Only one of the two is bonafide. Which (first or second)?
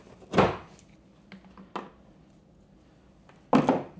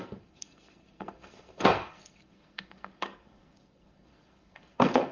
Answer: first